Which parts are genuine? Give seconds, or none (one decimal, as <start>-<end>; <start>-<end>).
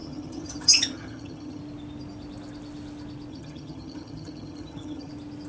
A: 1.6-3.3; 5.1-5.5